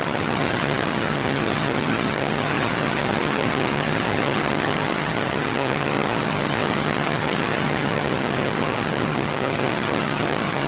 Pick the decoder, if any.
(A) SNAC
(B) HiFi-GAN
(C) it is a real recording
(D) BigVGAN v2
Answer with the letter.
B